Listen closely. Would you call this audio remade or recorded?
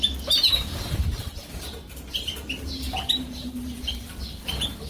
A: remade